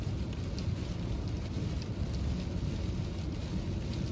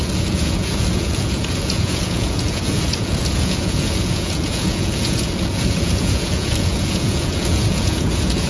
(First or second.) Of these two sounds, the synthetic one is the second